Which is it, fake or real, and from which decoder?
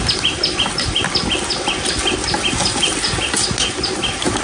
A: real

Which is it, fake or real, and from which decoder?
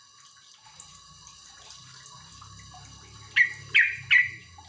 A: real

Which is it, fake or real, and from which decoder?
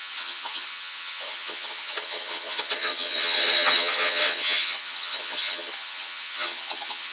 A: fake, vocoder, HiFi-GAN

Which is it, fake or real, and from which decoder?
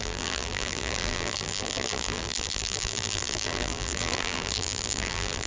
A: fake, vocoder, BigVGAN v2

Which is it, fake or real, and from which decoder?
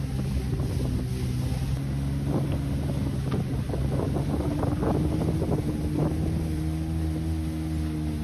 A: real